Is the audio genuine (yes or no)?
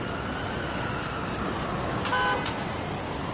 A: yes